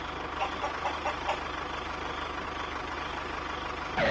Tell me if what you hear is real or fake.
real